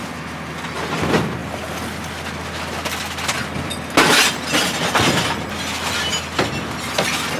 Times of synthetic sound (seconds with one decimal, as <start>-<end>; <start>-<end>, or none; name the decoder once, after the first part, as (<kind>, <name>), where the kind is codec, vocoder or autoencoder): none